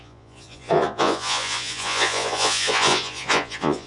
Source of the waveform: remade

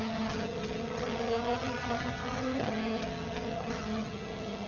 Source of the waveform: remade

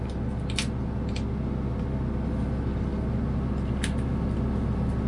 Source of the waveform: recorded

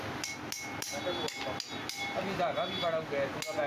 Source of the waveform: recorded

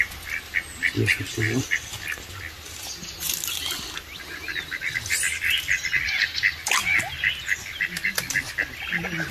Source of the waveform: recorded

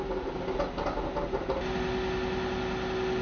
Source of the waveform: recorded